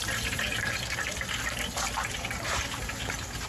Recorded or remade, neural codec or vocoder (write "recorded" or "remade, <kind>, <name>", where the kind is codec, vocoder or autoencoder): remade, vocoder, BigVGAN v2